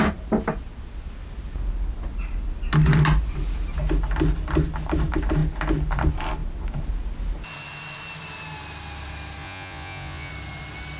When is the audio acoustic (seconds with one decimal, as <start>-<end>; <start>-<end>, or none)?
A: 0.0-9.4; 10.3-11.0